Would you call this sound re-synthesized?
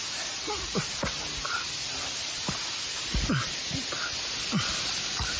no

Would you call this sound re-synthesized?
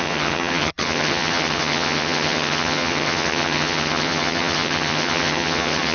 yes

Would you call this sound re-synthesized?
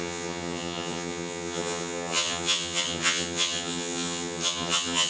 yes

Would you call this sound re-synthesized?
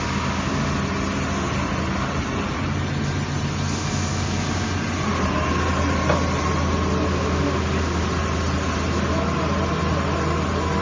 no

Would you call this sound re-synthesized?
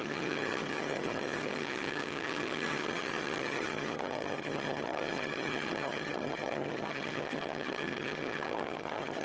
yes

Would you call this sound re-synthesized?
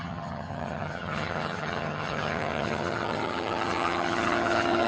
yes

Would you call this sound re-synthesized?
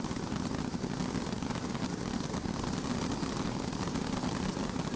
no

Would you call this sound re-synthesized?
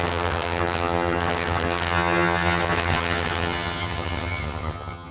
yes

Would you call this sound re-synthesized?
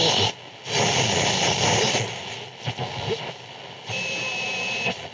no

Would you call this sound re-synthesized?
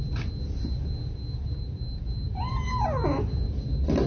no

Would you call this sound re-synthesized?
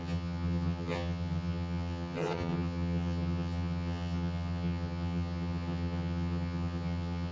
yes